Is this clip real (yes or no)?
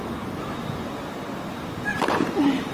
yes